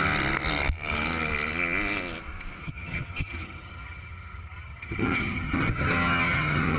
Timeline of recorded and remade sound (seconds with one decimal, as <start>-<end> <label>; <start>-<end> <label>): 0.0-2.6 recorded; 2.6-6.8 remade